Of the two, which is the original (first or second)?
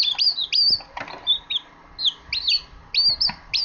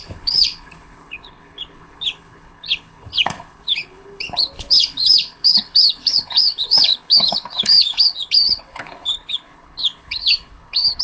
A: first